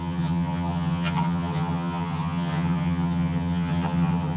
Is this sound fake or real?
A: fake